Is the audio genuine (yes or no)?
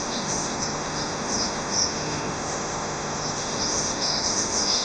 no